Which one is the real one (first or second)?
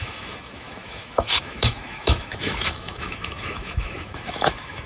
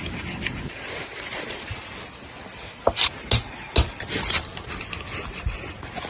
second